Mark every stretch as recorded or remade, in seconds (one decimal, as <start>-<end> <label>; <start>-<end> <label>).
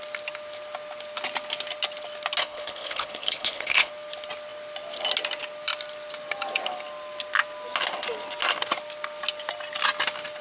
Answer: 0.0-2.4 recorded; 2.4-3.9 remade; 3.9-10.4 recorded